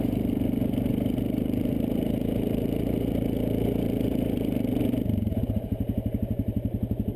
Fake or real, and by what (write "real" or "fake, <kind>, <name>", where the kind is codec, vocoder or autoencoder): fake, vocoder, BigVGAN v2